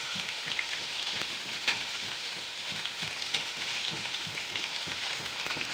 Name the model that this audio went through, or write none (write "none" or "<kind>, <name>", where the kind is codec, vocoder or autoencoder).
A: autoencoder, DAC-VAE